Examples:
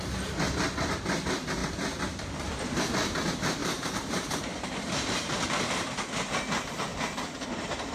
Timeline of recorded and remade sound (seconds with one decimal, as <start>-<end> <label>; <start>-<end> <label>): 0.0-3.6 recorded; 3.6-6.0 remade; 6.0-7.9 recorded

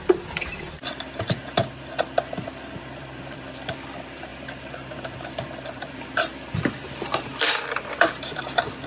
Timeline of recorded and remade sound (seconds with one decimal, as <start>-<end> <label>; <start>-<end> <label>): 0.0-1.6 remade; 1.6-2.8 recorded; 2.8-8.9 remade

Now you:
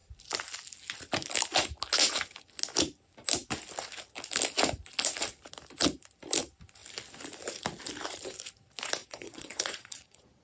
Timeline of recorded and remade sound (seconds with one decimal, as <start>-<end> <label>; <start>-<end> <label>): 0.0-9.0 recorded; 9.0-10.4 remade

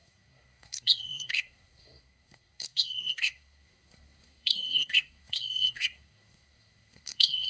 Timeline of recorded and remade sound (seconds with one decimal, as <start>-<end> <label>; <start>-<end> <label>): 0.0-7.5 remade

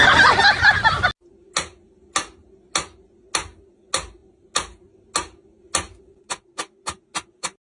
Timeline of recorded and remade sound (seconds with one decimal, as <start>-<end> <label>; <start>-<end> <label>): 0.0-7.6 recorded